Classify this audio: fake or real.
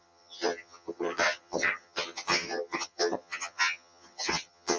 fake